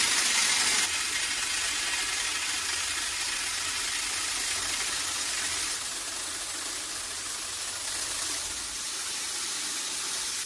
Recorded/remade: recorded